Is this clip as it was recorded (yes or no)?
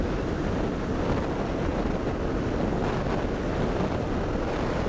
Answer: yes